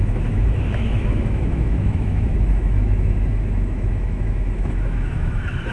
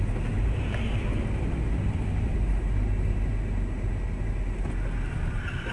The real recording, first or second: second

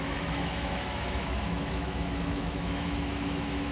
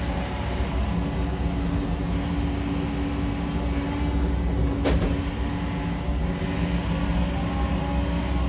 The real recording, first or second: second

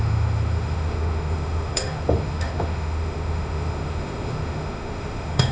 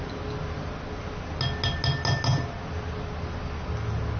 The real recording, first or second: second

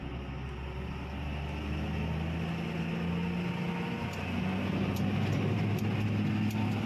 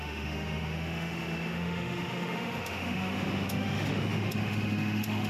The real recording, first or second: first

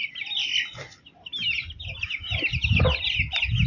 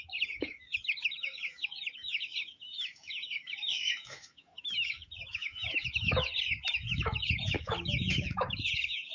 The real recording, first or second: first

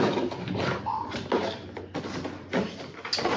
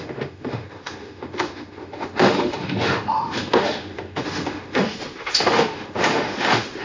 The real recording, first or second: first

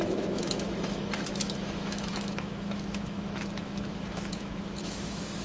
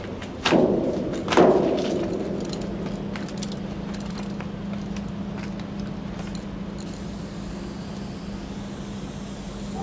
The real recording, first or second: second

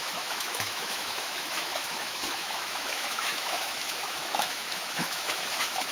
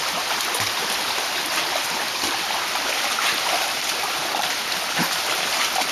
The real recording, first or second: second